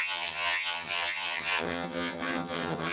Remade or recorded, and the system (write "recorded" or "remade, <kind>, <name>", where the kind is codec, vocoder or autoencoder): remade, vocoder, HiFi-GAN